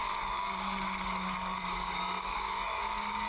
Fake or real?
fake